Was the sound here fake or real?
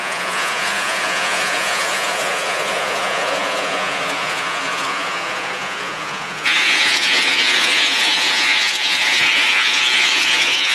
fake